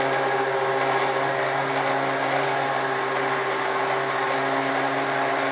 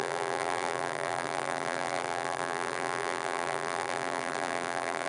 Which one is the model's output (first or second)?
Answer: second